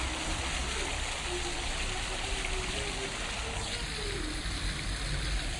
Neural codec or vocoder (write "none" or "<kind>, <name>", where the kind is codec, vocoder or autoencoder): none